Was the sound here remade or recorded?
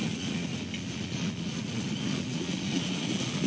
remade